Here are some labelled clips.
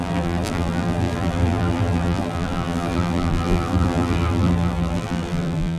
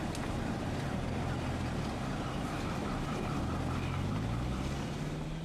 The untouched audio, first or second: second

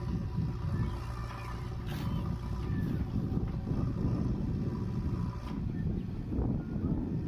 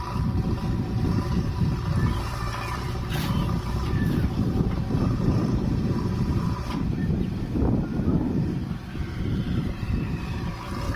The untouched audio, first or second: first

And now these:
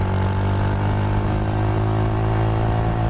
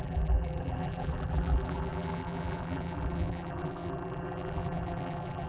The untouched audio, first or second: first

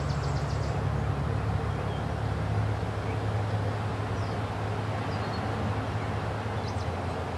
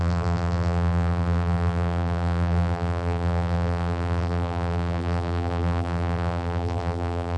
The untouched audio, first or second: first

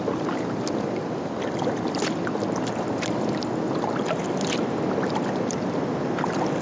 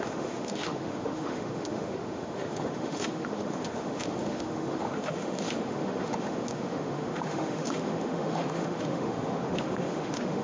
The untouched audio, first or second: first